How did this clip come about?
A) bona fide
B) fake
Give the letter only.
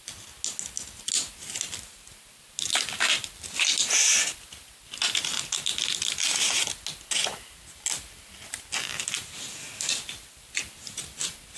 A